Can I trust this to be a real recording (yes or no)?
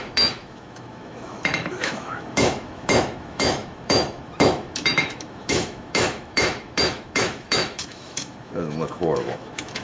no